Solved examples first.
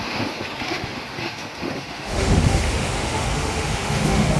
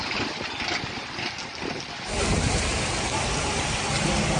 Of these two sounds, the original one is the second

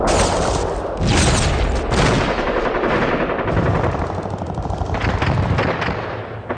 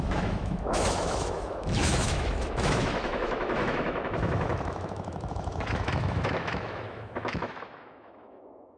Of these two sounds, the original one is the first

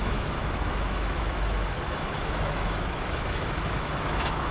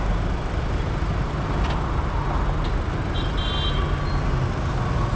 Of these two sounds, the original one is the second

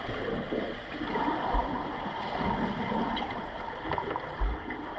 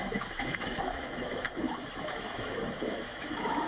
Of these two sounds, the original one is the first